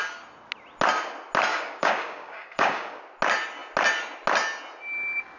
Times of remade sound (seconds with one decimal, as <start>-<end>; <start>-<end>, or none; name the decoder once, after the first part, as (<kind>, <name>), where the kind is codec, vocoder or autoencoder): 1.5-3.0 (codec, DAC)